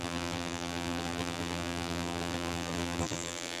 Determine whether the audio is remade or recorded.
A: remade